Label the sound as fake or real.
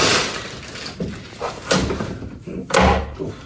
real